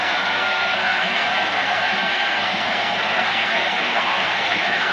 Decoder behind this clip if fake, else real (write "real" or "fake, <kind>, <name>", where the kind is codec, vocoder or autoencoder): fake, codec, SNAC